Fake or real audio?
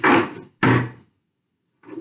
real